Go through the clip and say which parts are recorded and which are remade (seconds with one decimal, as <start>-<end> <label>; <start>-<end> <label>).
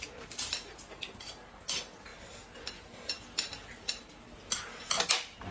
0.0-5.5 recorded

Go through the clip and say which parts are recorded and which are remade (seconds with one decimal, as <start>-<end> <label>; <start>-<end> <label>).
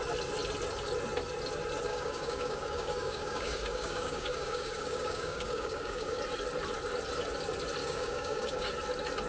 0.0-1.9 recorded; 1.9-6.2 remade; 6.2-7.8 recorded; 7.8-8.7 remade; 8.7-9.3 recorded